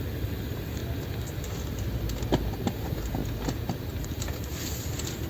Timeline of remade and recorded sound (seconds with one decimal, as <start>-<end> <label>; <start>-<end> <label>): 0.0-0.8 remade; 0.8-2.7 recorded; 2.7-3.2 remade; 3.2-4.0 recorded; 4.0-5.3 remade